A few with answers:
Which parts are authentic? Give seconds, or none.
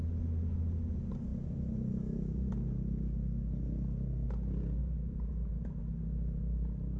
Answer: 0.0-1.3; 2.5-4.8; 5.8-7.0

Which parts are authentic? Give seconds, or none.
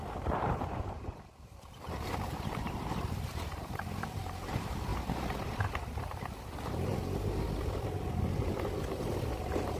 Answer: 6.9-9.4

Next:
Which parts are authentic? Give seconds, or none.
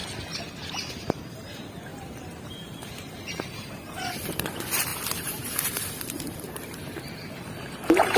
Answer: 0.0-0.9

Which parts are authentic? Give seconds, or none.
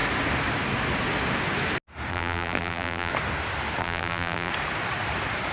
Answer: 0.0-2.1; 3.1-3.8; 4.5-5.5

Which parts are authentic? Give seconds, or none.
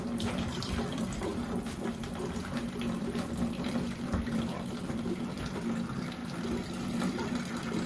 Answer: 6.2-7.0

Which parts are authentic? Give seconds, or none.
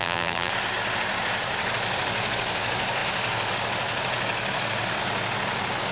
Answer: 0.5-5.9